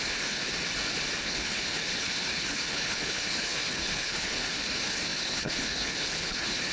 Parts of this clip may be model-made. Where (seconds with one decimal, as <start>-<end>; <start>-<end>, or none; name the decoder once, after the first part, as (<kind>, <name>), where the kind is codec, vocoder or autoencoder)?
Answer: 0.0-0.4 (codec, HILCodec); 1.2-6.7